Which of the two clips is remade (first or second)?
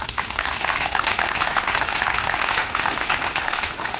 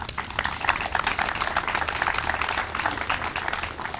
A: first